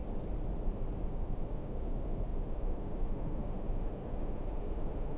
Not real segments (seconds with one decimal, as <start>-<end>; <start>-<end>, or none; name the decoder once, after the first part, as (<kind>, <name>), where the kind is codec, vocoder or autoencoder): 1.0-5.2 (autoencoder, DAC-VAE)